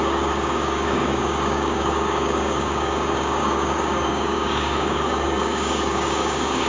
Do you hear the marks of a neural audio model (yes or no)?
yes